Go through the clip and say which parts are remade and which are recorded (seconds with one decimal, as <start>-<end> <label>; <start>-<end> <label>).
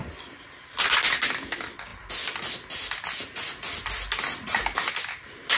0.0-5.6 recorded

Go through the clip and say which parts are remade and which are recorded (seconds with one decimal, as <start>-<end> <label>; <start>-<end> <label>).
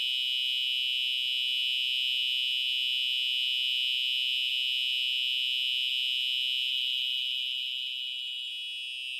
0.0-6.7 recorded; 6.7-8.5 remade; 8.5-9.2 recorded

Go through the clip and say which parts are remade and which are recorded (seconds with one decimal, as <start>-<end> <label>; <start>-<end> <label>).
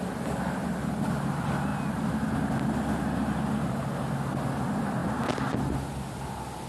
0.0-6.7 recorded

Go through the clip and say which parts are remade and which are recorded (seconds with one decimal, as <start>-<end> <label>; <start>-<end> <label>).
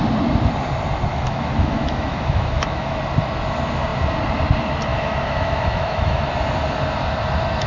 0.0-1.1 recorded; 1.1-3.0 remade; 3.0-4.9 recorded; 4.9-6.2 remade; 6.2-7.7 recorded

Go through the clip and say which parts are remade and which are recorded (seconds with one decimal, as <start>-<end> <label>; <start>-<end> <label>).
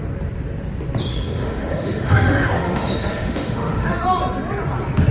0.0-1.1 recorded; 1.1-4.2 remade; 4.2-5.1 recorded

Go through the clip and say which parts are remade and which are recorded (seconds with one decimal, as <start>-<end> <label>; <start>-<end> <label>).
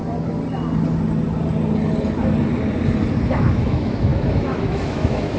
0.0-3.2 recorded; 3.2-5.4 remade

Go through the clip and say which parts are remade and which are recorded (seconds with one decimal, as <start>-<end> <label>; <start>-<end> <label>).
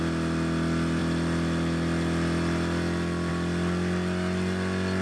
0.0-5.0 recorded